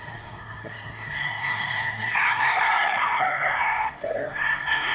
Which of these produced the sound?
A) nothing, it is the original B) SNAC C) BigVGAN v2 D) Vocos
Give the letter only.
B